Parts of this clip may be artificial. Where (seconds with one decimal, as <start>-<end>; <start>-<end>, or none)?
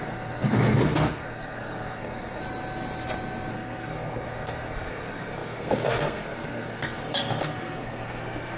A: 0.0-2.4; 3.5-8.6